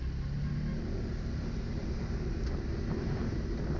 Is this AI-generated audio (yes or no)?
no